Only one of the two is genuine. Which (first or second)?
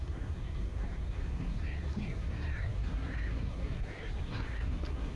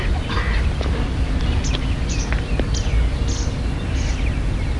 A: second